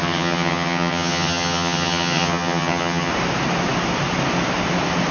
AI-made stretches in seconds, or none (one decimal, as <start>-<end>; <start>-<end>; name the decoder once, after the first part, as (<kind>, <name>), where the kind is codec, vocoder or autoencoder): 0.0-3.1 (vocoder, HiFi-GAN)